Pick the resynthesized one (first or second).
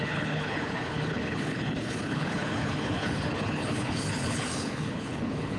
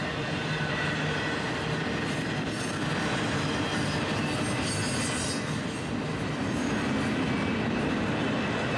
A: first